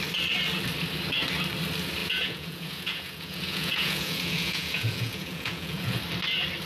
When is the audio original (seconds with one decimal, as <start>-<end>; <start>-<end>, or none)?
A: 0.0-2.0; 6.0-6.7